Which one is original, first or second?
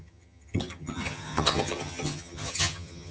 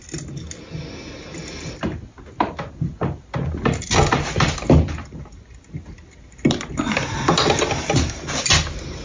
second